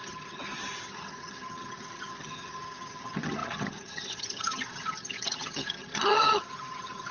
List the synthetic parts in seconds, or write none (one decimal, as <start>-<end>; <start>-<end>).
0.0-7.1